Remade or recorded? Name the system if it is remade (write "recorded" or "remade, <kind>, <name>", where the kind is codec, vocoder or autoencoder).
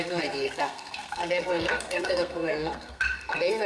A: remade, codec, SNAC